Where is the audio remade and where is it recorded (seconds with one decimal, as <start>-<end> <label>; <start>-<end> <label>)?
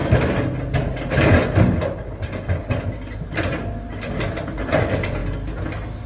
0.0-6.1 recorded